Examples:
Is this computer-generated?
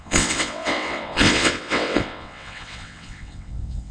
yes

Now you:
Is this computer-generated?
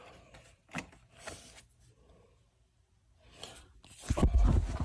no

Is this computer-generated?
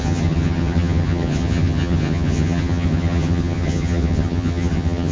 yes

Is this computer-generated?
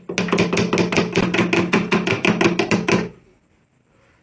no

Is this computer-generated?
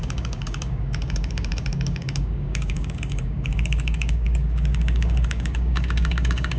yes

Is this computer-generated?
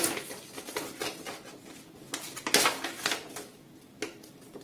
no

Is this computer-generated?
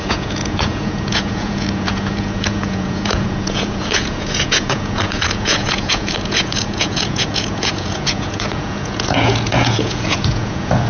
yes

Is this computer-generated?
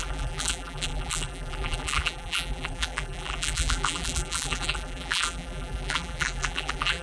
yes